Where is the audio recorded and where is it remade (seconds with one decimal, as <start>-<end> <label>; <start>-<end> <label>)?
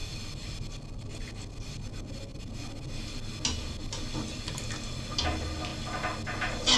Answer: 0.0-6.8 recorded